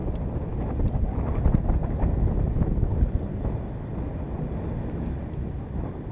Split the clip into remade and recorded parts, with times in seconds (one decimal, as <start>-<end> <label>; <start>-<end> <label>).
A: 0.0-6.1 recorded